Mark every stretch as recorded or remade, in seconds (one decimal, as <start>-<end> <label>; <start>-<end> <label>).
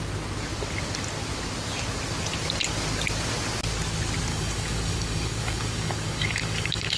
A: 0.0-4.3 recorded; 4.3-7.0 remade